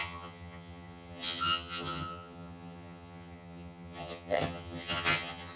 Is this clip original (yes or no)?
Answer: no